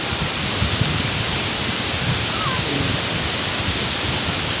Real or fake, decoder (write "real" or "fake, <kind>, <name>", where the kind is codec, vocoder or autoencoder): real